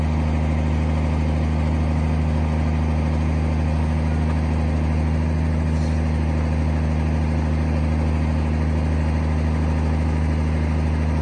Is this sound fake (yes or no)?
no